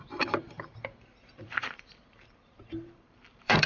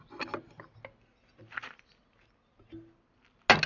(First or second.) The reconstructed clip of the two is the first